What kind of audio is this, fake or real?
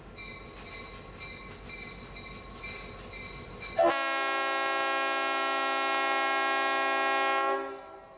real